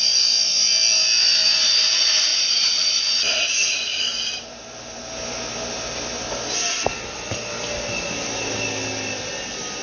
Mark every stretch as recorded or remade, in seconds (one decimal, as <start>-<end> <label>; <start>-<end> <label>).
0.0-2.3 recorded; 2.3-4.6 remade; 4.6-9.8 recorded